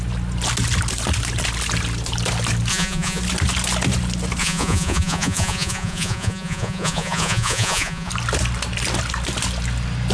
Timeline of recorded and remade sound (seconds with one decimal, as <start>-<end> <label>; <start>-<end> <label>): 0.0-2.7 recorded; 2.7-3.2 remade; 3.2-4.4 recorded; 4.4-8.1 remade; 8.1-10.1 recorded